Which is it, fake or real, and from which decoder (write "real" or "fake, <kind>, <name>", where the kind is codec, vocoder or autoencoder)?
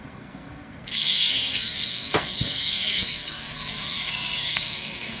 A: fake, codec, SNAC